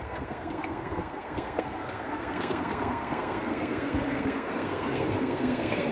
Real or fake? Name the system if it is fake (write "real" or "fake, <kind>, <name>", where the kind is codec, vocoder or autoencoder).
fake, codec, SNAC